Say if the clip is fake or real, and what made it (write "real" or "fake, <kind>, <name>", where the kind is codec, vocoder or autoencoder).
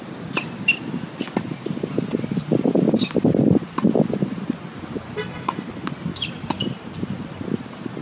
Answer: real